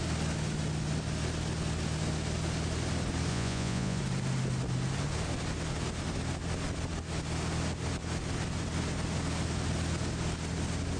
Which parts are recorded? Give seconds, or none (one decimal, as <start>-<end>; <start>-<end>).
0.0-3.3; 4.0-11.0